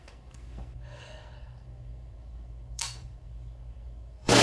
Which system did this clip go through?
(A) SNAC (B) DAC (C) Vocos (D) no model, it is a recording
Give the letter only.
A